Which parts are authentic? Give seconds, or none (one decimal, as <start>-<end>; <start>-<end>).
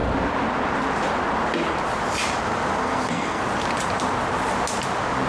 0.0-2.8; 3.4-5.3